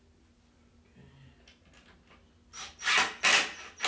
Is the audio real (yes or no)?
yes